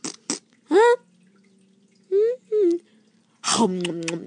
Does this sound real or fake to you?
real